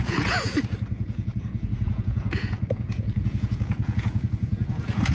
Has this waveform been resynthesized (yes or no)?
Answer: yes